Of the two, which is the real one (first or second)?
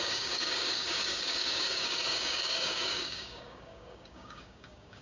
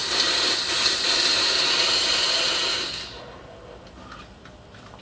second